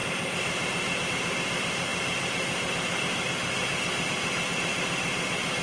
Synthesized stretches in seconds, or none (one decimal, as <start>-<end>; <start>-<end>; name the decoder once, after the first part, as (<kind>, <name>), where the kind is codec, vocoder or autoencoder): none